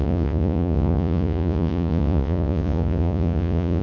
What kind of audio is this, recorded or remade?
remade